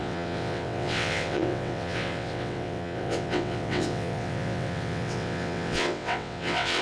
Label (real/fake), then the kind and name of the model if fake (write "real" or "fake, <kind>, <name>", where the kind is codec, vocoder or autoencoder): fake, vocoder, WaveNeXt